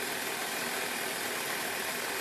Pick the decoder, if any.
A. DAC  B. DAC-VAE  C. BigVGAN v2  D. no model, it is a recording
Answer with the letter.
D